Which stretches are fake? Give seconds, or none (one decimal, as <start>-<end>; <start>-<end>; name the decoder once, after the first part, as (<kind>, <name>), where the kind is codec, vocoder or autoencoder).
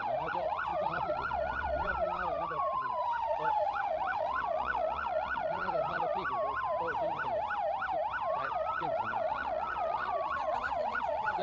0.0-6.2 (vocoder, Vocos); 8.3-11.4